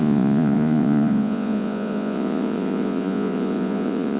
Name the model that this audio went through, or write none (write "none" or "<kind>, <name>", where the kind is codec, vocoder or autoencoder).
vocoder, Vocos